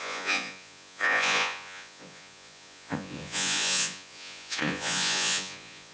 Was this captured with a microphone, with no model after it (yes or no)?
no